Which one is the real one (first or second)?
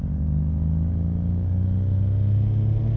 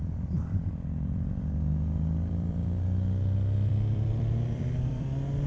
first